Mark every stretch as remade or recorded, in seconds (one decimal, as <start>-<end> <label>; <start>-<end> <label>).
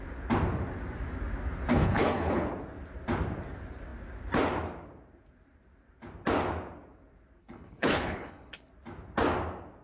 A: 0.0-1.7 recorded; 1.7-2.5 remade; 2.5-7.4 recorded; 7.4-8.7 remade; 8.7-9.8 recorded